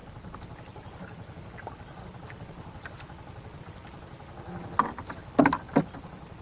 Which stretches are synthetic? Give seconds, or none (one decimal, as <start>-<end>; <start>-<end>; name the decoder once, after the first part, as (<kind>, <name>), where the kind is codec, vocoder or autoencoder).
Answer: none